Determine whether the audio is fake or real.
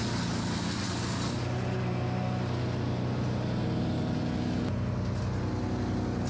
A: real